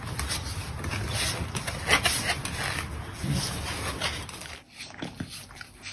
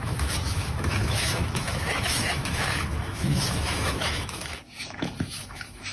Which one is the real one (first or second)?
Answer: first